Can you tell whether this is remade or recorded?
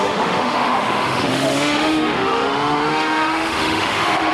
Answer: remade